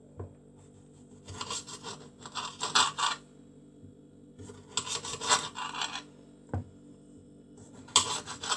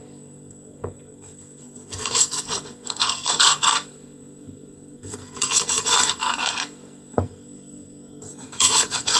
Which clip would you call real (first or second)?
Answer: first